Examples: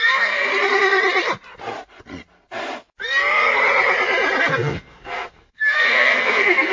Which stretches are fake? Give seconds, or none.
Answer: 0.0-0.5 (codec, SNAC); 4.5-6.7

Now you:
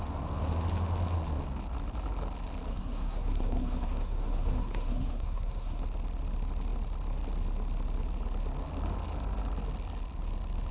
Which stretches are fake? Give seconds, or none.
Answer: 2.7-5.8 (codec, SNAC)

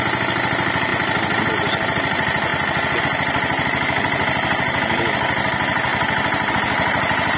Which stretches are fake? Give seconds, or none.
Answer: none

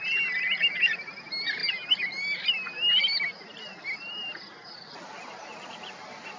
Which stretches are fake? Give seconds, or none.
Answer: none

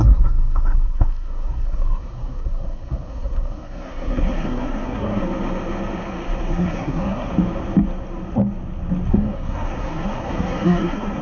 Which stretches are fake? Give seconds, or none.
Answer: 0.0-5.2 (codec, SNAC); 6.5-7.3; 9.1-11.2

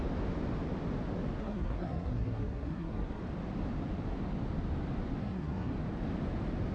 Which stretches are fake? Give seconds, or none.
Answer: 1.4-3.2 (codec, SNAC); 5.2-5.7

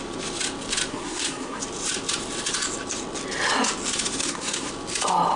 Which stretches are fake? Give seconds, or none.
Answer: 0.9-1.6 (codec, SNAC); 4.2-4.7